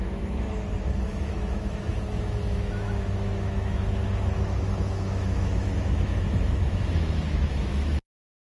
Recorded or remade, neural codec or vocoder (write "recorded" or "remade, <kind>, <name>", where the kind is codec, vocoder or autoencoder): remade, autoencoder, DAC-VAE